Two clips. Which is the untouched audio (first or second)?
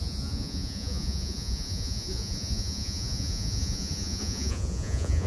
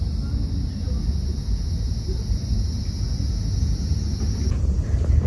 second